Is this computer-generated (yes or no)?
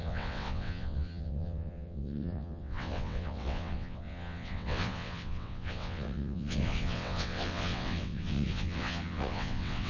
yes